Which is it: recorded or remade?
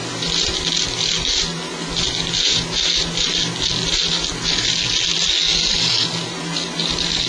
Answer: recorded